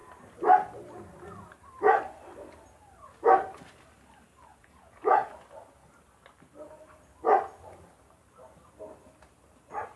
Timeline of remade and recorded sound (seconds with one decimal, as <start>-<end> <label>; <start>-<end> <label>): 0.0-4.5 recorded; 4.5-5.3 remade; 5.3-10.0 recorded